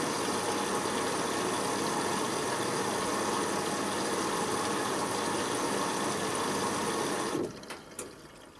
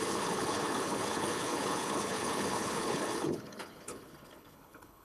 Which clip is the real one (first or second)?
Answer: first